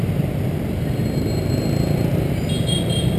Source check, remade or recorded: recorded